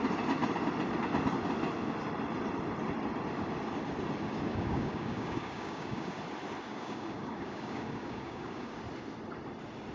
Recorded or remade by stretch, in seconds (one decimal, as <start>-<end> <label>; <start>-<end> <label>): 0.0-4.5 recorded; 4.5-6.2 remade; 6.2-6.7 recorded; 6.7-8.7 remade; 8.7-9.9 recorded

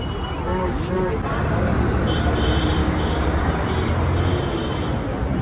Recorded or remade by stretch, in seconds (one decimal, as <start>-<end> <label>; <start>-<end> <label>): 0.0-2.8 recorded; 2.8-3.5 remade; 3.5-5.4 recorded

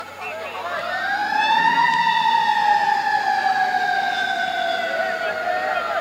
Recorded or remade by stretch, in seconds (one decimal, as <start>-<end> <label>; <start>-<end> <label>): 0.0-6.0 recorded